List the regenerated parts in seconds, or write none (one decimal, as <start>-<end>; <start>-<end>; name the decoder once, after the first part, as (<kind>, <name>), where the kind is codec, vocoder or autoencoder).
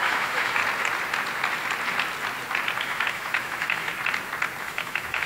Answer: 0.0-0.6 (autoencoder, DAC-VAE); 2.8-3.9; 4.6-5.3